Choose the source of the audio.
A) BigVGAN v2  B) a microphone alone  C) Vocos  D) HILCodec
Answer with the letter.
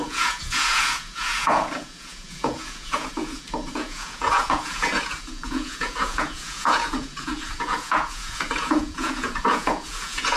C